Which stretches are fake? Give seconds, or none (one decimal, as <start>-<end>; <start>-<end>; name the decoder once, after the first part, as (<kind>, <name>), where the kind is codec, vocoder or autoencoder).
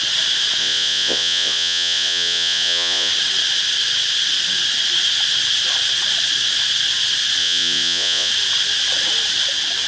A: 0.6-3.1 (vocoder, Vocos); 7.4-8.3